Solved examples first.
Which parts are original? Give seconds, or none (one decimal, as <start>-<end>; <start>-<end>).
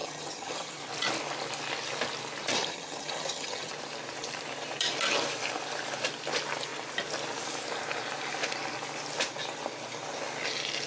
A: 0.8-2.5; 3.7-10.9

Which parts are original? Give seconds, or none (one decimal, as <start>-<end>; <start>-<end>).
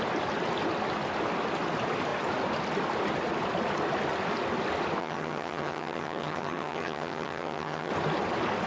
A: 0.0-5.0; 7.9-8.7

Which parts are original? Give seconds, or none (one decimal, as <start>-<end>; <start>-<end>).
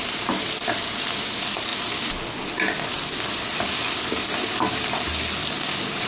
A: 0.0-6.1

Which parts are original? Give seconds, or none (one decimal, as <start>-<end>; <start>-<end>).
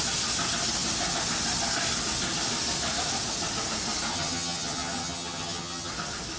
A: 0.0-4.1; 5.9-6.4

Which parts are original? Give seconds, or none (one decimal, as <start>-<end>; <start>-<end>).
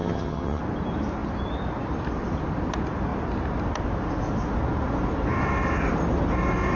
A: 0.6-6.8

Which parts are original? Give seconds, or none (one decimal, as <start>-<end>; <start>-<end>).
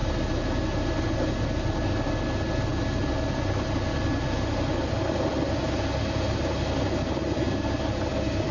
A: 0.0-8.5